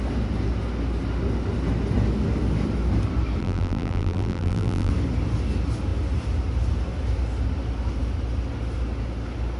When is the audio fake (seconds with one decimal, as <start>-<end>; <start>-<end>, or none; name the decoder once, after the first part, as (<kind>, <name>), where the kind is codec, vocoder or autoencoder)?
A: 3.4-4.9 (vocoder, BigVGAN v2)